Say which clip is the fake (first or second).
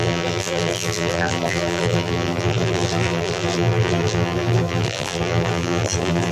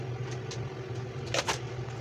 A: first